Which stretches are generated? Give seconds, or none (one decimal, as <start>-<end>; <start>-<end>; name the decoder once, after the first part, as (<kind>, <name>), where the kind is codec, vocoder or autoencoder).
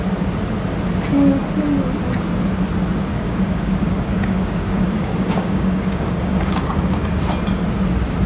3.1-7.2 (codec, DAC)